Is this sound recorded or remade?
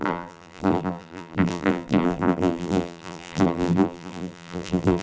remade